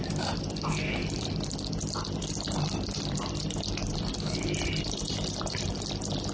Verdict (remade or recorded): remade